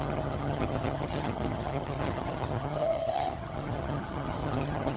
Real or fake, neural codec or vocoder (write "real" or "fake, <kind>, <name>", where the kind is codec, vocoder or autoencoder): fake, vocoder, HiFi-GAN